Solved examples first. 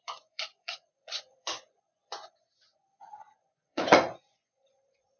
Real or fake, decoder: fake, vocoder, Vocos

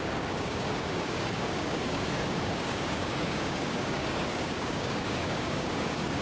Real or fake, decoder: fake, codec, DAC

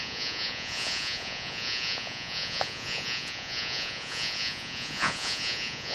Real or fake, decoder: fake, vocoder, Vocos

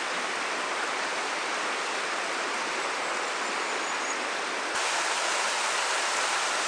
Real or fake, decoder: real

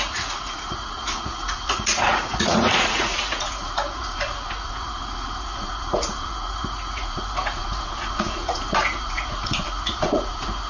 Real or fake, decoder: fake, vocoder, Vocos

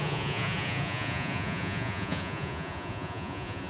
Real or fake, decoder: fake, vocoder, Vocos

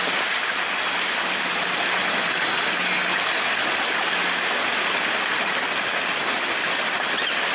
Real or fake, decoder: real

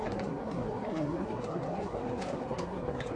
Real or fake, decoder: fake, codec, SNAC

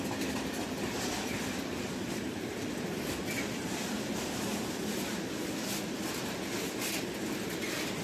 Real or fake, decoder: real